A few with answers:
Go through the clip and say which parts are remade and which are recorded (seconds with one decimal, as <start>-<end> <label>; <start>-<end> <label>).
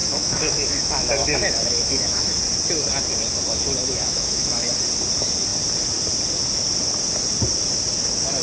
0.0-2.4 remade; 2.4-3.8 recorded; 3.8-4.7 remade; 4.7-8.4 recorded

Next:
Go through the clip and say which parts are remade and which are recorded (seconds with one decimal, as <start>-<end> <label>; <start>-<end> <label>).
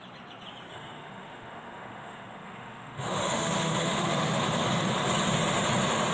0.0-0.7 recorded; 0.7-4.4 remade; 4.4-6.1 recorded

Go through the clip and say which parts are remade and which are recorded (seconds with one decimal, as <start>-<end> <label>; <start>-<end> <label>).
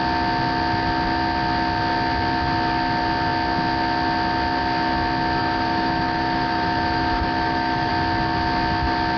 0.0-5.4 recorded; 5.4-7.9 remade; 7.9-9.2 recorded